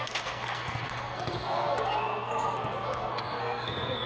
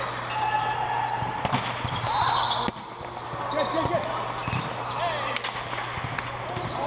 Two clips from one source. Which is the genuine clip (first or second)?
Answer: second